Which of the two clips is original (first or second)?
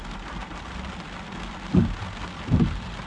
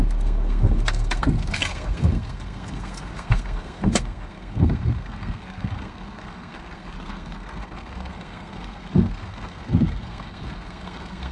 first